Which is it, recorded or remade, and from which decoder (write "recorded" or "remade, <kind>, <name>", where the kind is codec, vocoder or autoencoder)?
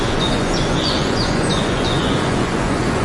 remade, vocoder, Vocos